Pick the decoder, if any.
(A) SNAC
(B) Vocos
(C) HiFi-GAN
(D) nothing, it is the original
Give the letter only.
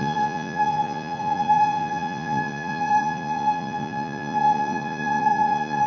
B